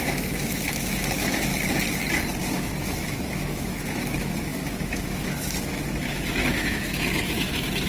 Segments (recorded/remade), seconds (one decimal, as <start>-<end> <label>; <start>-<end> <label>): 0.0-1.5 remade; 1.5-2.4 recorded; 2.4-7.9 remade